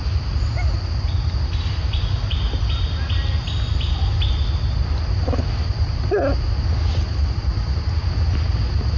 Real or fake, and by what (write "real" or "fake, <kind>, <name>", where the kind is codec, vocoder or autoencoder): real